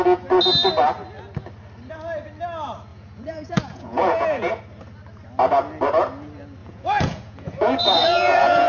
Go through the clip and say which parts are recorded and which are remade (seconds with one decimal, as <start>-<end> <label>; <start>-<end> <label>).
0.0-2.9 recorded; 2.9-4.6 remade; 4.6-6.6 recorded; 6.6-8.7 remade